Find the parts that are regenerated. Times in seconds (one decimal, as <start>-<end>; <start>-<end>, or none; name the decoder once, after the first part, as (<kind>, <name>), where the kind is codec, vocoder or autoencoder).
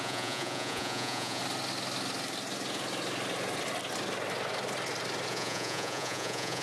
0.0-1.4 (vocoder, Vocos); 5.3-6.6